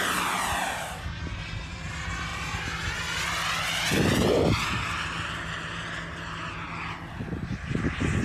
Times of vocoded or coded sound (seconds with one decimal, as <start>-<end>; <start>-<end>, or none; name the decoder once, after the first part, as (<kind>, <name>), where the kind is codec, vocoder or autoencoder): 1.3-1.9 (vocoder, BigVGAN v2)